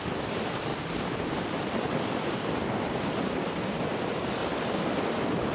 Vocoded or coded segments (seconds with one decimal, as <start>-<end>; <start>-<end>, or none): 0.7-3.2; 4.4-5.5